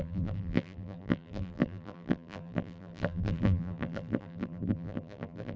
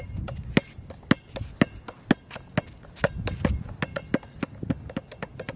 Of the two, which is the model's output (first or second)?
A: first